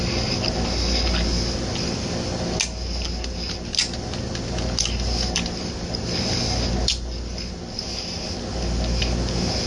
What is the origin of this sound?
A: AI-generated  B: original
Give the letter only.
B